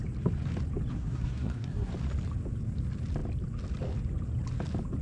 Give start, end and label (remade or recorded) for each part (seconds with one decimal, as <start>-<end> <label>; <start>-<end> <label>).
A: 0.0-0.9 recorded; 0.9-1.9 remade; 1.9-5.0 recorded

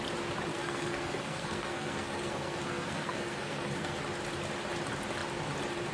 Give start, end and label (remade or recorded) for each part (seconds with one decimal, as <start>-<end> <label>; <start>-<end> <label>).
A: 0.0-0.5 recorded; 0.5-4.0 remade; 4.0-5.9 recorded

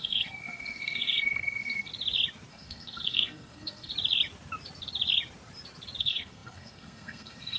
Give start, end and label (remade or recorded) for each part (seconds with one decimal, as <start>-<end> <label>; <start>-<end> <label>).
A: 0.0-1.9 remade; 1.9-2.5 recorded; 2.5-3.9 remade; 3.9-6.0 recorded; 6.0-7.6 remade

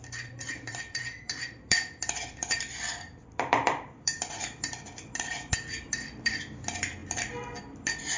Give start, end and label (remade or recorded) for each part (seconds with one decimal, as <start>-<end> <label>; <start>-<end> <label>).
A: 0.0-7.0 remade; 7.0-7.6 recorded; 7.6-8.2 remade

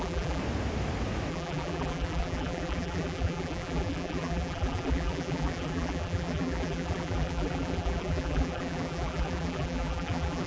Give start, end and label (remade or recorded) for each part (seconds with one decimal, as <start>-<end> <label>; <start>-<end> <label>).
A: 0.0-0.4 remade; 0.4-1.3 recorded; 1.3-10.5 remade

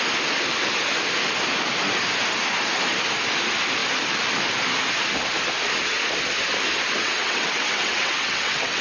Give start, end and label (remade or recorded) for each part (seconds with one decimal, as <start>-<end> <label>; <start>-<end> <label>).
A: 0.0-7.0 recorded; 7.0-8.8 remade

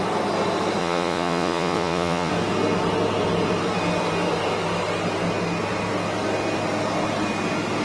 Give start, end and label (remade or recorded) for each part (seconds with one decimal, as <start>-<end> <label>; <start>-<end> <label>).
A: 0.0-0.8 recorded; 0.8-2.3 remade; 2.3-7.8 recorded